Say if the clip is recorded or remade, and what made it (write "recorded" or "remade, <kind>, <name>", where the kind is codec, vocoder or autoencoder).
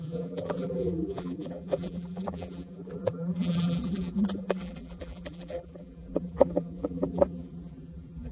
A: remade, vocoder, BigVGAN v2